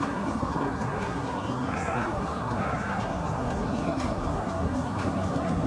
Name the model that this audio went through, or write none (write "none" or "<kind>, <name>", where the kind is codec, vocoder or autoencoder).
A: codec, SNAC